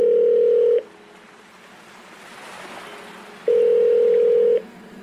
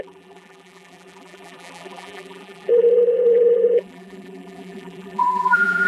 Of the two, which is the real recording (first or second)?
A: first